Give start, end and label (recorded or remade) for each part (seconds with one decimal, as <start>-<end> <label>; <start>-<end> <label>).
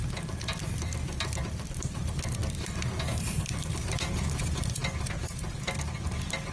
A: 0.0-3.9 remade; 3.9-6.5 recorded